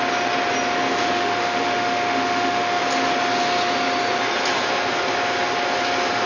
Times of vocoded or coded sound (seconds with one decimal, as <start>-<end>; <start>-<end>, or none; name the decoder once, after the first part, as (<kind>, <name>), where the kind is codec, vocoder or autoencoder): 0.9-2.8 (autoencoder, DAC-VAE)